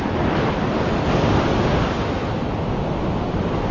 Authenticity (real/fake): real